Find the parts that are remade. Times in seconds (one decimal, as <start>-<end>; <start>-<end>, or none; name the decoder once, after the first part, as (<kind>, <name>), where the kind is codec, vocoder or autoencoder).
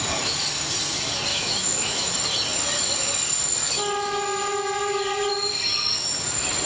1.3-2.1 (autoencoder, DAC-VAE)